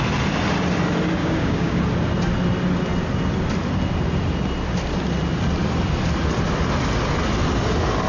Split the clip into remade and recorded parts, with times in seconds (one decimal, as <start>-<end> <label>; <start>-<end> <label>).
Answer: 0.0-1.2 recorded; 1.2-1.8 remade; 1.8-8.1 recorded